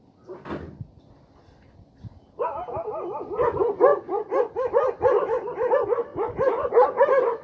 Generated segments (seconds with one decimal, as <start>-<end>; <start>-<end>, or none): none